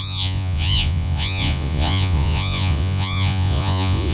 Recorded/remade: remade